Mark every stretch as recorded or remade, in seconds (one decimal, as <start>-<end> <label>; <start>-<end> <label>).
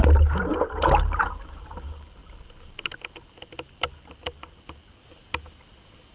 0.0-6.1 recorded